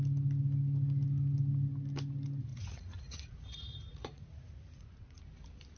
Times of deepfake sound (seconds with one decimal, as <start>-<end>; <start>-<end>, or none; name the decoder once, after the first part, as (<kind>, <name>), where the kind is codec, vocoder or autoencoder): 2.5-5.2 (vocoder, Vocos)